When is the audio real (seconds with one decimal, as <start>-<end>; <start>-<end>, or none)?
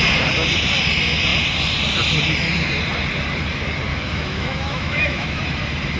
0.0-3.9; 5.4-6.0